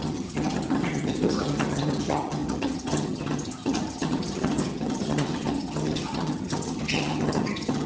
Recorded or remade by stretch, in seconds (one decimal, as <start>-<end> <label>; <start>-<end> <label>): 0.0-7.9 remade